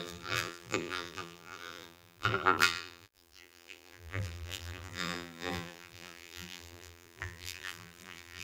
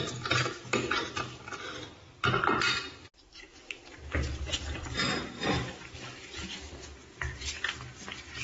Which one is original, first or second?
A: second